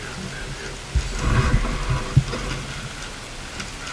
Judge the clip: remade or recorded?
recorded